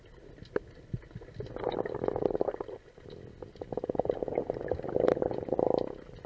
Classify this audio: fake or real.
real